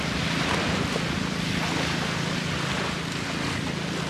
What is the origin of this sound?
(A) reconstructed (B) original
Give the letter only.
B